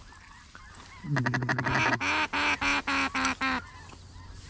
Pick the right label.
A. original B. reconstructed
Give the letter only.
A